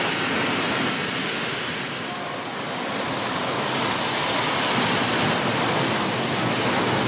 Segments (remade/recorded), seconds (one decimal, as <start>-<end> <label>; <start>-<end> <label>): 0.0-1.2 recorded; 1.2-1.8 remade; 1.8-7.1 recorded